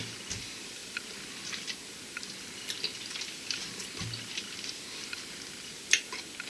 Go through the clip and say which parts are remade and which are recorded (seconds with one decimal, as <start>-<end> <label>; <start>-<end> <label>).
0.0-6.5 recorded